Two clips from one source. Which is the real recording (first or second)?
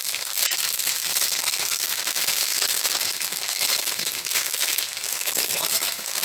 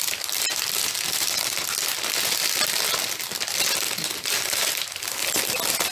second